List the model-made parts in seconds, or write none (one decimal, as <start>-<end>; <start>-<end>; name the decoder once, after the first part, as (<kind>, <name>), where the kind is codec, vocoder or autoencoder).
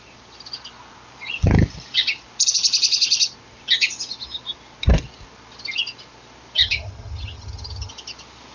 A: 6.6-7.9 (vocoder, HiFi-GAN)